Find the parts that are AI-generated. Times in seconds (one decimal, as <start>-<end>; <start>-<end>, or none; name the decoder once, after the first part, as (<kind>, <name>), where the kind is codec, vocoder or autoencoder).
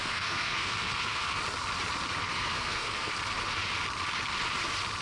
0.0-1.4 (codec, SNAC); 2.3-3.1